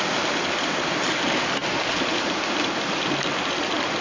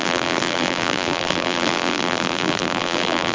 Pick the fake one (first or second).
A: second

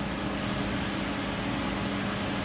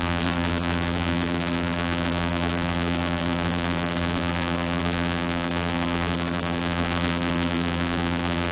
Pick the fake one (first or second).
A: second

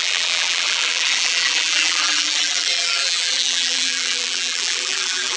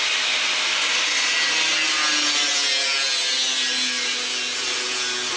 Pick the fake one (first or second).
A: first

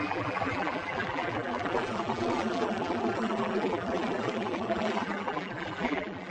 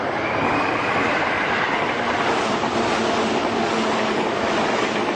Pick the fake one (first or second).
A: first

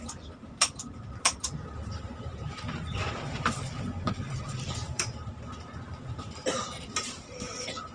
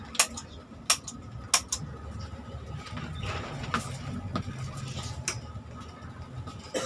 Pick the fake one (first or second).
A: first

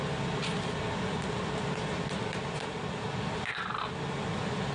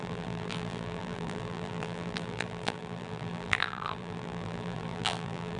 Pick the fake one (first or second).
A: second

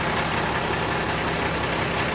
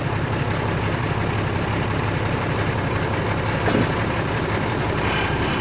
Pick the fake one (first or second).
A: second